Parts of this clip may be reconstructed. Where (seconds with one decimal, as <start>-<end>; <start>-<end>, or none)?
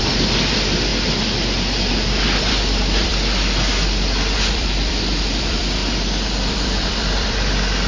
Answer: 0.0-0.9; 1.9-3.1; 4.5-5.8; 6.5-7.9